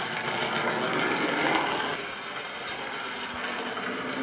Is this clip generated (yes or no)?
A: no